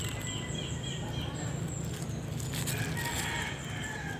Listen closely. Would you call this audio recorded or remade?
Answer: recorded